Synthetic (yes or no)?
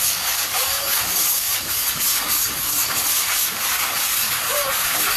yes